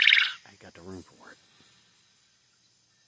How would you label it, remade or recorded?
recorded